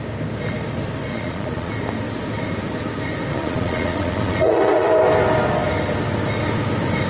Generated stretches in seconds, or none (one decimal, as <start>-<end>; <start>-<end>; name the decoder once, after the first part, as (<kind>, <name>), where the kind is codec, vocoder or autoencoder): 1.1-1.7 (vocoder, Vocos); 3.3-4.9